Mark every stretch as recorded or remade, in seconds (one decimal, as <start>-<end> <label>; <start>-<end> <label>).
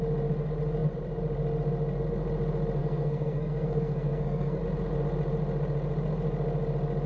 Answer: 0.0-2.8 recorded; 2.8-4.6 remade; 4.6-7.1 recorded